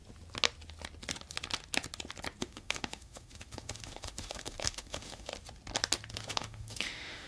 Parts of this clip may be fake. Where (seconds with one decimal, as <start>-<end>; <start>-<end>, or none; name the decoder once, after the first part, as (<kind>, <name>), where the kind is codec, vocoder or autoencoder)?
2.4-5.3 (autoencoder, DAC-VAE); 6.1-7.3